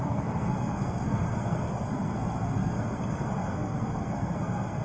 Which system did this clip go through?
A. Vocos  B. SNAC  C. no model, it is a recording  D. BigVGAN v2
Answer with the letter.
B